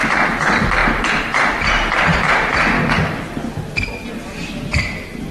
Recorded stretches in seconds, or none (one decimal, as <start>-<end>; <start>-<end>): 0.0-5.3